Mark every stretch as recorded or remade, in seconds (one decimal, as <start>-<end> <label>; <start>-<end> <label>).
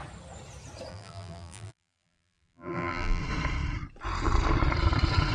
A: 0.0-0.9 recorded; 0.9-3.2 remade; 3.2-5.3 recorded